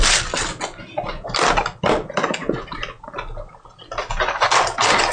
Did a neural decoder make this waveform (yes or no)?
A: no